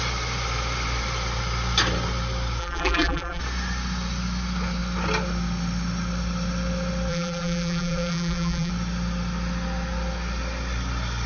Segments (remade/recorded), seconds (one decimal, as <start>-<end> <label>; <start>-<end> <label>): 0.0-2.6 recorded; 2.6-3.4 remade; 3.4-7.1 recorded; 7.1-8.7 remade; 8.7-11.3 recorded